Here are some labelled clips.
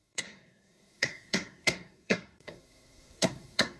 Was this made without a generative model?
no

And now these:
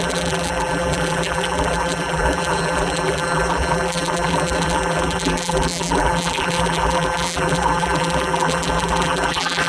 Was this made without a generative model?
no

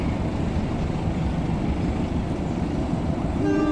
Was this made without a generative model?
yes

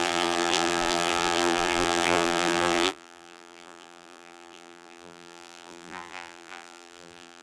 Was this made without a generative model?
no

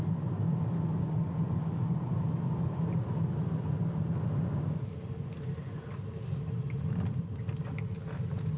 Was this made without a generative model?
yes